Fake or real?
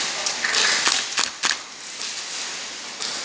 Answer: real